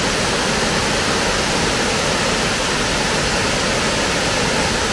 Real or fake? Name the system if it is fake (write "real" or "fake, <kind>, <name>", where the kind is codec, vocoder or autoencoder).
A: real